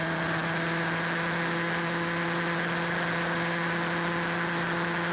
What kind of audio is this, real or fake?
real